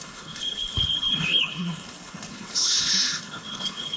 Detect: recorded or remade remade